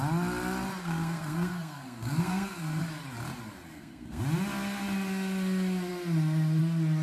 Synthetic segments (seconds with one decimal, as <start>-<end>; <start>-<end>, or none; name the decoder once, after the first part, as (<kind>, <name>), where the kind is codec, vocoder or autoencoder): 0.8-2.8 (codec, SNAC); 3.7-4.2